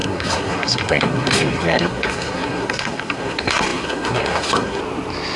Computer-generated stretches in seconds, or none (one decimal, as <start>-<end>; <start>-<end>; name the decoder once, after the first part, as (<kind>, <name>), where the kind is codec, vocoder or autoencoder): 0.0-4.8 (codec, SNAC)